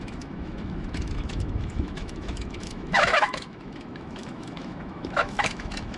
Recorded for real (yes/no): no